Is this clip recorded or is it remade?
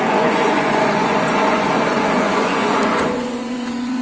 remade